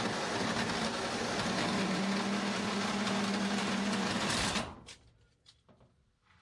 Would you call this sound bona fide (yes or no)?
yes